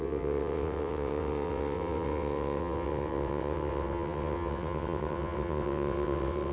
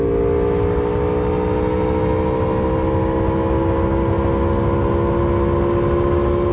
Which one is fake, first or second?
first